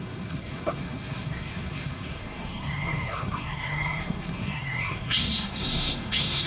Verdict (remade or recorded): remade